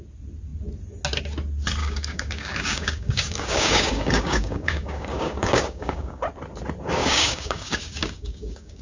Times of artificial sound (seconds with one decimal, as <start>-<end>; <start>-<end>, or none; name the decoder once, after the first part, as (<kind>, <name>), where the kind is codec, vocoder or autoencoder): 1.8-6.2 (codec, DAC); 7.0-8.8